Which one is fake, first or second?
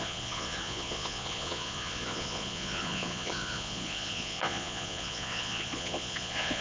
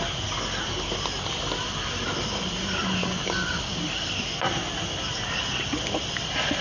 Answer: first